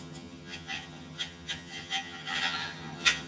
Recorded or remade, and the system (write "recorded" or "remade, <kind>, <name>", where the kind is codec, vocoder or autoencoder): remade, vocoder, HiFi-GAN